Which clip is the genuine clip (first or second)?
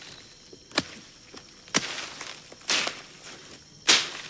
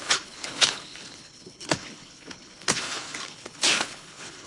first